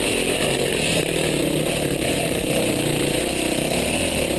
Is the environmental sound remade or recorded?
remade